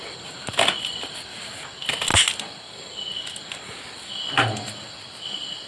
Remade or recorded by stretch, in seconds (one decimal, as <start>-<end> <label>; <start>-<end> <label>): 0.0-5.7 recorded